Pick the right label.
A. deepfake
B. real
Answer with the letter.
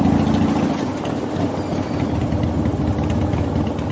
B